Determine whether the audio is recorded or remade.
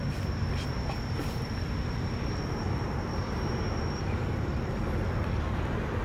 remade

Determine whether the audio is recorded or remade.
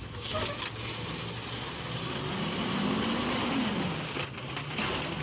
recorded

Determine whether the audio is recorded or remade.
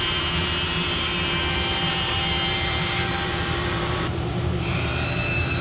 remade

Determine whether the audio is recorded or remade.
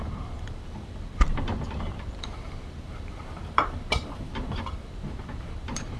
remade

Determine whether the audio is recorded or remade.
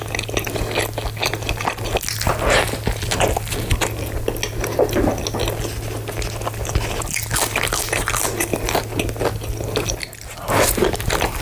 recorded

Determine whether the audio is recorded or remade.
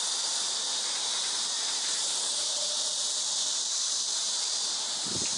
remade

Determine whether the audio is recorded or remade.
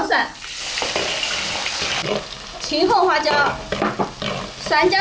recorded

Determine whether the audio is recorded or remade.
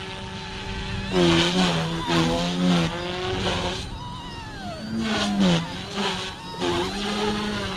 recorded